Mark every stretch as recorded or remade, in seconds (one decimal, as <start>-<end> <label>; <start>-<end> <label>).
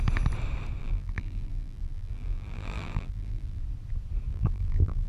0.0-0.8 recorded; 0.8-3.6 remade; 3.6-4.3 recorded; 4.3-5.1 remade